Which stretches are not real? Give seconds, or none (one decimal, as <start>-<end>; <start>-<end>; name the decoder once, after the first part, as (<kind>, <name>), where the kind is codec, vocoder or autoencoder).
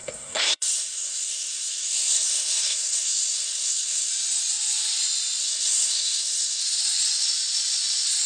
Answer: 0.0-4.1 (codec, SNAC); 5.4-6.6